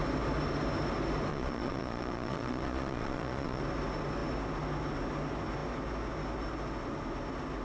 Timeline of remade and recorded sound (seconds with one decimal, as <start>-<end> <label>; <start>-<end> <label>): 0.0-1.3 recorded; 1.3-3.6 remade; 3.6-7.6 recorded